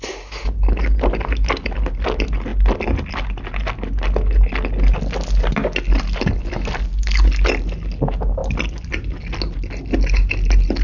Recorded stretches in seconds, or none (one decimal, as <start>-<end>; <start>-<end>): 0.0-10.8